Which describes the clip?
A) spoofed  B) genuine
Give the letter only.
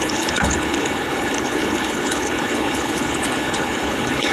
A